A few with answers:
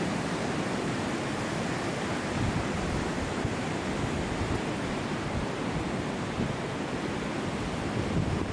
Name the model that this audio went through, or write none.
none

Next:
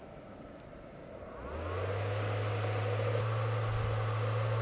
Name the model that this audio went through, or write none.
none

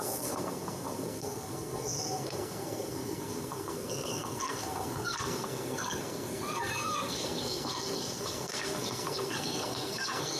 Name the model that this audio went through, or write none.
codec, SNAC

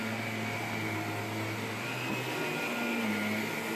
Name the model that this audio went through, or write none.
none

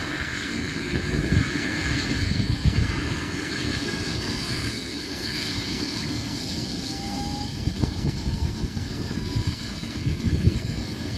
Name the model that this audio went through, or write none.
codec, SNAC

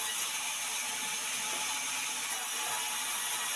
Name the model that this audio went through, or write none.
none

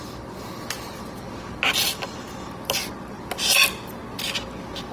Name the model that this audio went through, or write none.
none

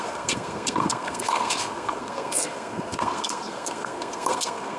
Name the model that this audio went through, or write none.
codec, SNAC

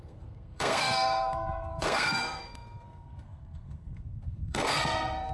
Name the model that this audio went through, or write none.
codec, SNAC